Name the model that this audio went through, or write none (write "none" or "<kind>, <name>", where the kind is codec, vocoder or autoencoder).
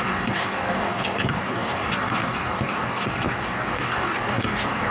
codec, DAC